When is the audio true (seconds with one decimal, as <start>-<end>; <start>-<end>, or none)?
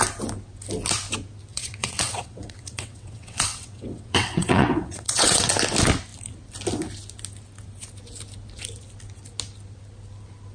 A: 0.0-1.5; 5.5-10.5